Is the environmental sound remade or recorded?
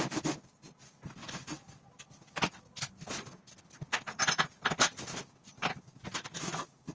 recorded